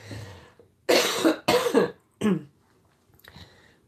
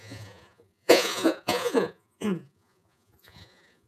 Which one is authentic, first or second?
first